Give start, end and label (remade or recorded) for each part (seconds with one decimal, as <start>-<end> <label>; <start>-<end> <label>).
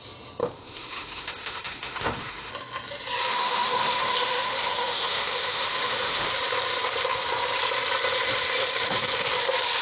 0.0-0.4 recorded; 0.4-2.5 remade; 2.5-3.3 recorded; 3.3-6.3 remade; 6.3-9.8 recorded